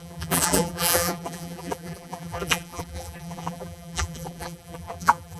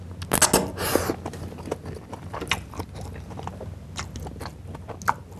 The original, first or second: second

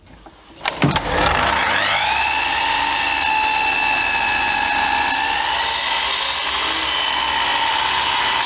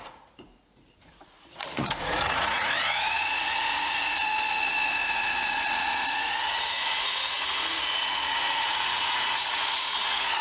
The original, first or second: first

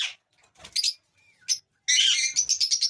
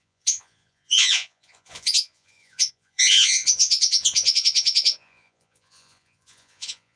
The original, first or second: first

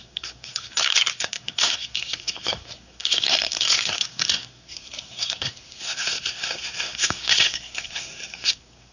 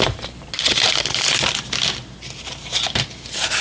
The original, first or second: second